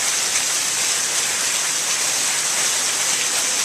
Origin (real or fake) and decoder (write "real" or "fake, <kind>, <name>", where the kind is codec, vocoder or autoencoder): real